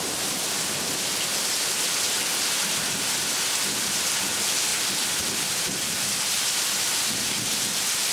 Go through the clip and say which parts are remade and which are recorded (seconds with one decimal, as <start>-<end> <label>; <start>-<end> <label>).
0.0-8.1 recorded